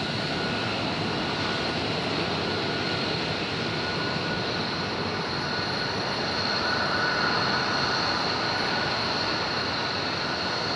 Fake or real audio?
real